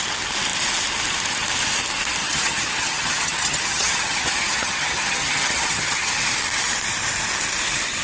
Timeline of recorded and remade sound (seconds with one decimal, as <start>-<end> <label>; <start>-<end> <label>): 0.0-2.2 recorded; 2.2-6.1 remade; 6.1-8.0 recorded